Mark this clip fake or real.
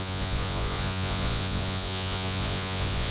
fake